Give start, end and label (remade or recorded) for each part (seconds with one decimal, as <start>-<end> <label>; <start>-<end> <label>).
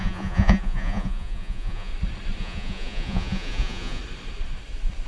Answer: 0.0-1.9 remade; 1.9-2.4 recorded; 2.4-4.0 remade; 4.0-5.1 recorded